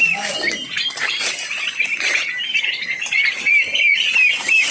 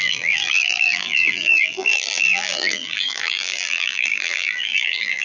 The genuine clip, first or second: first